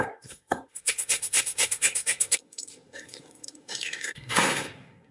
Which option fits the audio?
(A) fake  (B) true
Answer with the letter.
A